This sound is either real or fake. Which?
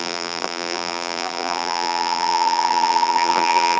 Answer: fake